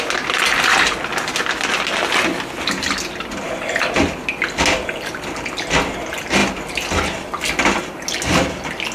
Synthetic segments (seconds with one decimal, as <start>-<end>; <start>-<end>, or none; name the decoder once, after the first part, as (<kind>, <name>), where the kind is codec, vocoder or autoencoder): none